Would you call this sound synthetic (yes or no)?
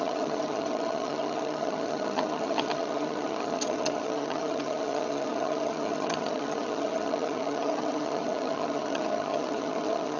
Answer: yes